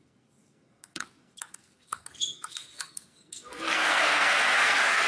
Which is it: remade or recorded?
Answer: remade